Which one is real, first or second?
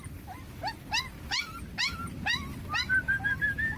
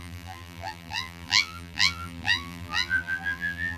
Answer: first